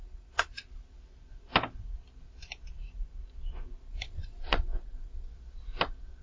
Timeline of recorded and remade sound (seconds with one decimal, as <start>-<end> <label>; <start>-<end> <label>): 0.0-0.6 remade; 0.6-3.8 recorded; 3.8-5.3 remade; 5.3-6.2 recorded